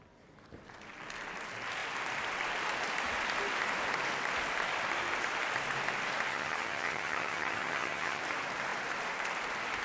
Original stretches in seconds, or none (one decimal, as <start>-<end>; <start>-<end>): 0.0-6.3; 8.2-9.8